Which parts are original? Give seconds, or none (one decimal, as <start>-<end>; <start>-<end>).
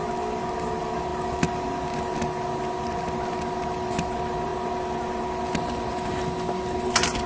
0.0-7.3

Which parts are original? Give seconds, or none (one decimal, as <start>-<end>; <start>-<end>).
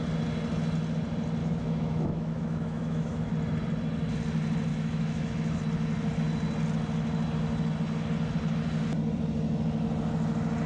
0.0-1.4; 3.3-4.7; 5.6-10.7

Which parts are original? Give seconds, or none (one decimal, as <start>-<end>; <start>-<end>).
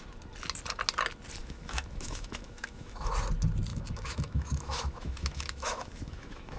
0.0-1.4; 3.1-3.7